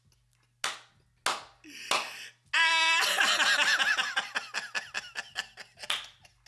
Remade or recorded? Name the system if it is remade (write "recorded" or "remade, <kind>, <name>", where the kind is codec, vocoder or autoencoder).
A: recorded